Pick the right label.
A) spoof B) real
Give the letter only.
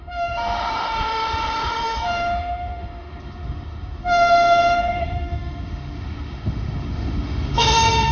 A